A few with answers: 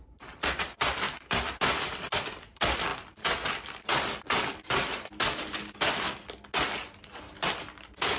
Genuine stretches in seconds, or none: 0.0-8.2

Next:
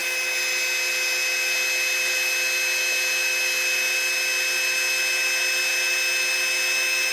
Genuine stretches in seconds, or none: 0.0-7.1

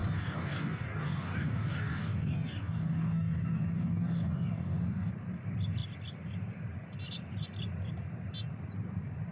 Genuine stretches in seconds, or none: 5.1-9.3

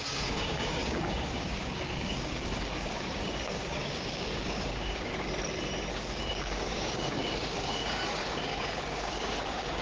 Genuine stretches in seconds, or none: 5.1-5.9

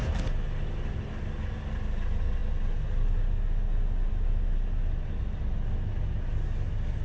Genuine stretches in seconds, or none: 0.0-7.0

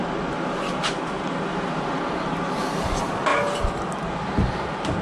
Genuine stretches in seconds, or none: 0.0-5.0

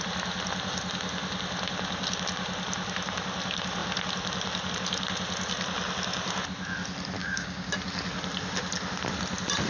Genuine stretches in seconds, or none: 0.0-7.2; 7.7-9.7

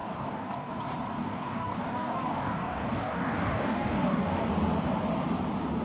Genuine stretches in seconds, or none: 0.7-1.2; 4.5-5.8